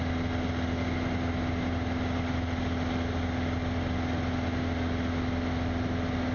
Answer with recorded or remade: recorded